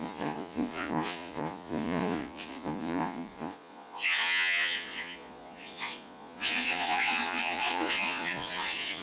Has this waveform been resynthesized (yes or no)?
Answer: yes